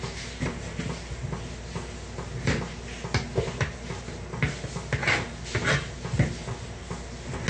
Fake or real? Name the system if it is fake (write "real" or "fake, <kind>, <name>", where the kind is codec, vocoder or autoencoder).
real